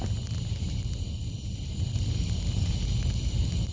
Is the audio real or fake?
real